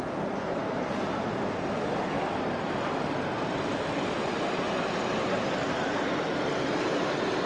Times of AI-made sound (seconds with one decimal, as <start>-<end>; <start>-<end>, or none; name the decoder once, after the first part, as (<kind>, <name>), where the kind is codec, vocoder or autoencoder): none